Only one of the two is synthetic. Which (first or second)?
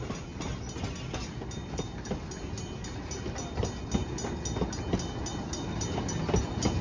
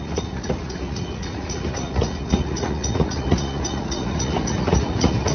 second